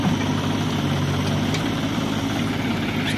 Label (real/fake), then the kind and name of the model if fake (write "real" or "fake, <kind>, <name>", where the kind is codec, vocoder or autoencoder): real